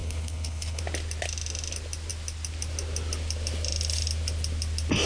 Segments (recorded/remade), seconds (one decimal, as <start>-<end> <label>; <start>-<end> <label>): 0.0-0.8 remade; 0.8-5.1 recorded